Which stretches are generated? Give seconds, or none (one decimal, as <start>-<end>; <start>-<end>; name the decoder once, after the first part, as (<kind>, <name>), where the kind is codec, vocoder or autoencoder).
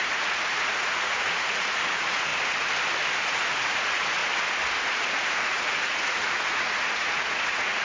0.0-2.3 (vocoder, Vocos); 3.2-4.2; 4.8-7.8